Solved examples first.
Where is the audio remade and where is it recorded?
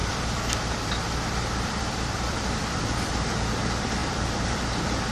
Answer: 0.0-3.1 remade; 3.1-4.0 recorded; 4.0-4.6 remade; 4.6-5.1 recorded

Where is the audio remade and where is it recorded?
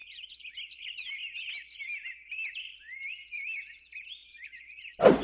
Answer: 0.0-5.2 recorded